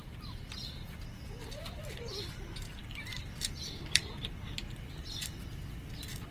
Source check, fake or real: fake